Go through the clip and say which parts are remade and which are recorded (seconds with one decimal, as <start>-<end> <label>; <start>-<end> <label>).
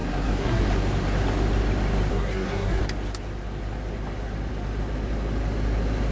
0.0-0.6 remade; 0.6-2.1 recorded; 2.1-2.8 remade; 2.8-6.1 recorded